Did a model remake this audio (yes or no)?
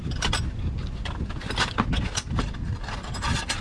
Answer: no